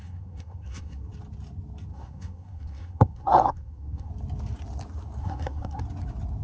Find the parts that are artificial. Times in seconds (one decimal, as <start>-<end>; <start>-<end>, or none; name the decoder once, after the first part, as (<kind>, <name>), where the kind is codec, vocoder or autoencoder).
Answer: 0.0-1.1 (codec, SNAC); 1.9-4.1; 5.2-5.8